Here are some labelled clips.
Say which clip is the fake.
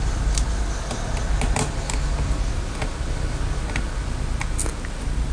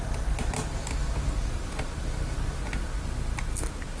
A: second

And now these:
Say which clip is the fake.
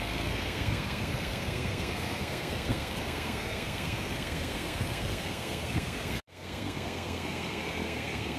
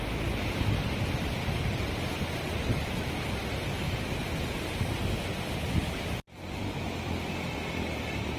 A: first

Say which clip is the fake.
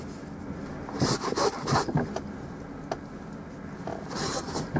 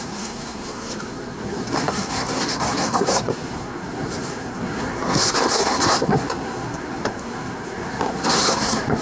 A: second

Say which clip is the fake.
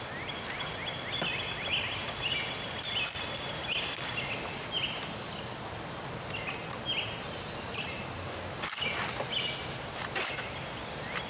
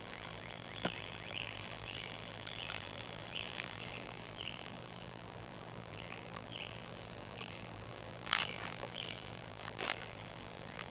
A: second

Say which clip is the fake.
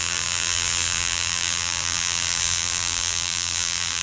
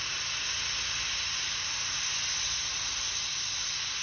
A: first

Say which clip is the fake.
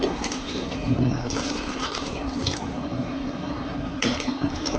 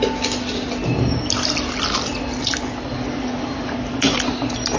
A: first